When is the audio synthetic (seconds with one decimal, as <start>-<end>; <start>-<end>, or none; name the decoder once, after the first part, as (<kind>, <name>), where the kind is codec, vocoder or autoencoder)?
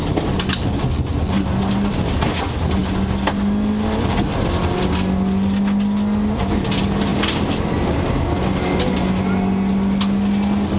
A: none